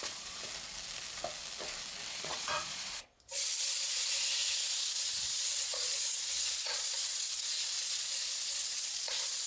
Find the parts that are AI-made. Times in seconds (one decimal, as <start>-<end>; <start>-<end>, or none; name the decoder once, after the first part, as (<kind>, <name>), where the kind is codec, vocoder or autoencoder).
0.0-0.4 (vocoder, Vocos); 2.1-9.5

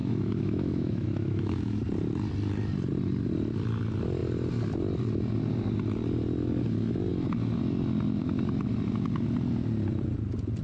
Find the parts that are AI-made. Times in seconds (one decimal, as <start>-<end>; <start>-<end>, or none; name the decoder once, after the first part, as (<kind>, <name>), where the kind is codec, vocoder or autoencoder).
0.0-1.8 (autoencoder, DAC-VAE)

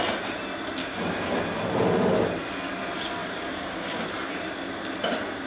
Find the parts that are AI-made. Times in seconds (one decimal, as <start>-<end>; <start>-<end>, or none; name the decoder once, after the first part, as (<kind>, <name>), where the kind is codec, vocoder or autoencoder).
0.8-1.4 (codec, DAC); 3.2-4.1

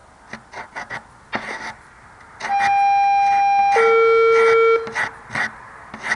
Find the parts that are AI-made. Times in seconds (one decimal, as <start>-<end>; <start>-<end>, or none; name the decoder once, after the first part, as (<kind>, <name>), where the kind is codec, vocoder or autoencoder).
none

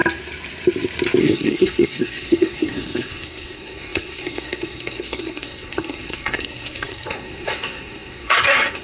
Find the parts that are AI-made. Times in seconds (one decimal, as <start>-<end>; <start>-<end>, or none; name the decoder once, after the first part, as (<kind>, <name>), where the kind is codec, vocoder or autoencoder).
1.2-8.8 (codec, SNAC)

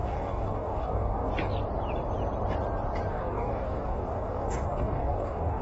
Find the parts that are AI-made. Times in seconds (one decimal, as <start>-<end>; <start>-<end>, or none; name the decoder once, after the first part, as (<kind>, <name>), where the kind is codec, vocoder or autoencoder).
0.0-1.3 (codec, DAC); 3.1-5.6

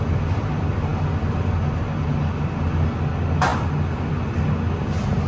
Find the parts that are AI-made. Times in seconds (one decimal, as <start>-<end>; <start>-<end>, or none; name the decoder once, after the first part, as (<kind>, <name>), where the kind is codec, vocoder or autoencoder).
none

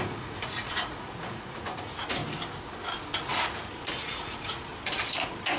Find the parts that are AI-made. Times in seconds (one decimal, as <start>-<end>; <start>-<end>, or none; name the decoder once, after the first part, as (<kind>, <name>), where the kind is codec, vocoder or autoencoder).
0.0-2.2 (vocoder, Vocos); 3.2-4.7